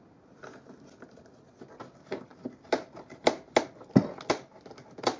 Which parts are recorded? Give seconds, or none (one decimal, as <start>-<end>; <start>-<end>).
0.0-5.2